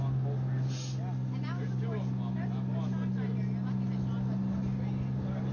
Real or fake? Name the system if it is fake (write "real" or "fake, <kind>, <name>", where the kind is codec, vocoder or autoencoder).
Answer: real